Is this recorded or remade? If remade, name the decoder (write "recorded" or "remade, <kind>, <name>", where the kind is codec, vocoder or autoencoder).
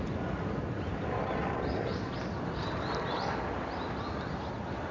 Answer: recorded